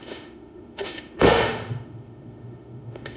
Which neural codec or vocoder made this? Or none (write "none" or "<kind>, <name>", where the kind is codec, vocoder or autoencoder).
autoencoder, DAC-VAE